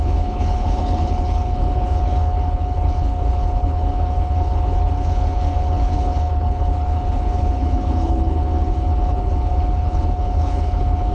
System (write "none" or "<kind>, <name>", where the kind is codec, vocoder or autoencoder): codec, HILCodec